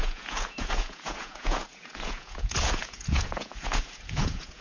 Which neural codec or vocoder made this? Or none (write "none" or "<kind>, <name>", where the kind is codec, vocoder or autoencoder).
vocoder, Vocos